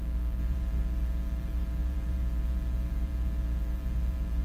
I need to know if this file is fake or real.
fake